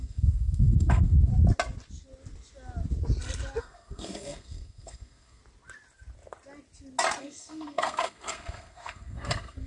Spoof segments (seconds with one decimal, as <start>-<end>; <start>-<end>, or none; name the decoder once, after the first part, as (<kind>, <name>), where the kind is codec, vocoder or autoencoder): 0.0-1.3 (codec, SNAC); 3.6-5.4; 7.2-9.7